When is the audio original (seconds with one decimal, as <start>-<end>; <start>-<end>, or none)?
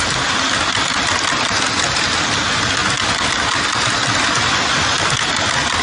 0.0-5.8